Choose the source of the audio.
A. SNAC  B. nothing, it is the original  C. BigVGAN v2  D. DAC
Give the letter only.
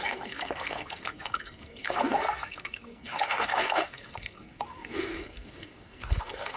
A